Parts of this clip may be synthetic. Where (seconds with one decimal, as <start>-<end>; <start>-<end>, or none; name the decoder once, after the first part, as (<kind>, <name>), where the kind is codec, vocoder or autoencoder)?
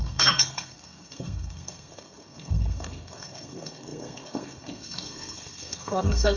0.0-6.4 (codec, SNAC)